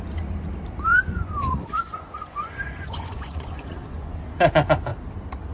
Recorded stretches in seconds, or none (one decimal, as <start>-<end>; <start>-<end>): 0.0-0.9; 4.2-5.5